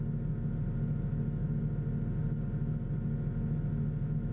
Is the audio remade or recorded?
recorded